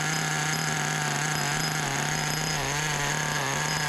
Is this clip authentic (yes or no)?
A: yes